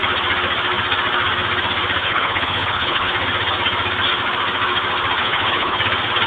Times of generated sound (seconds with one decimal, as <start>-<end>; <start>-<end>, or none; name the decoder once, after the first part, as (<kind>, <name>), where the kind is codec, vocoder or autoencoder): 2.0-3.1 (codec, HILCodec); 5.2-5.8